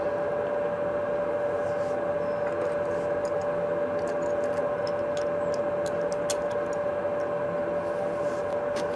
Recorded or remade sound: recorded